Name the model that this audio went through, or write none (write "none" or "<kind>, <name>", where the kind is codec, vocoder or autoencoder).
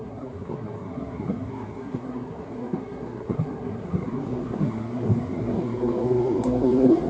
codec, SNAC